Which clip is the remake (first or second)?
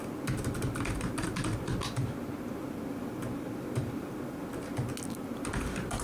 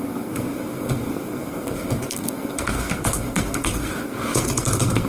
second